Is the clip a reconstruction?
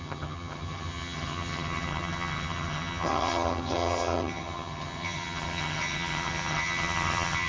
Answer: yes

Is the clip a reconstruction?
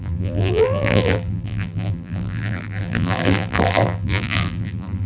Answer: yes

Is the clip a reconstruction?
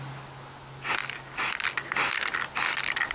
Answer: no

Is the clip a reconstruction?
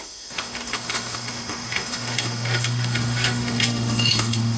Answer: yes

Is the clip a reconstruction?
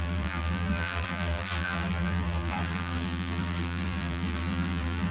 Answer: yes